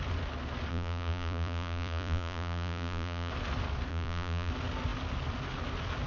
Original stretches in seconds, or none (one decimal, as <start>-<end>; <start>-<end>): 0.0-0.7; 3.3-3.9; 4.5-6.1